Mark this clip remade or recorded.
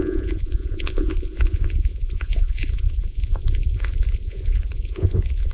remade